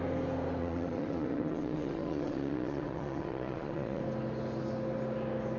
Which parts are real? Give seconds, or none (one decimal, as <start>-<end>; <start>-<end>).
0.0-0.6; 4.0-5.6